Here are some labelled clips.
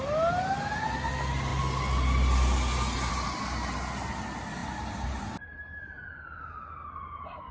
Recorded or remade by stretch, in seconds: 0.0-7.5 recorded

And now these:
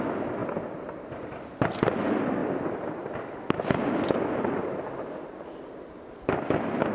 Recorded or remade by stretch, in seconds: 0.0-6.9 recorded

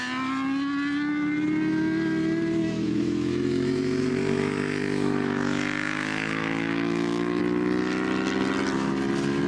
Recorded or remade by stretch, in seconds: 0.0-2.6 recorded; 2.6-7.4 remade; 7.4-9.5 recorded

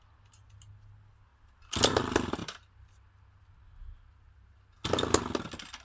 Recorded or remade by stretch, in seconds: 0.0-5.8 recorded

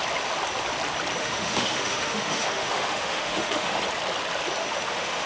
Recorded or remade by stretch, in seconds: 0.0-1.2 recorded; 1.2-3.8 remade; 3.8-4.6 recorded; 4.6-5.3 remade

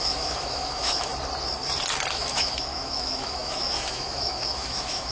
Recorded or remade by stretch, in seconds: 0.0-1.1 remade; 1.1-2.1 recorded; 2.1-5.1 remade

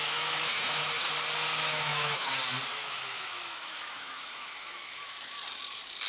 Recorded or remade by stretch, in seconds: 0.0-1.1 remade; 1.1-1.7 recorded; 1.7-2.3 remade; 2.3-2.7 recorded; 2.7-5.4 remade; 5.4-6.1 recorded